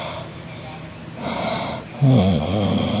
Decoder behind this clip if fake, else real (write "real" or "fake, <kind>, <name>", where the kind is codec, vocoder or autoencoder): real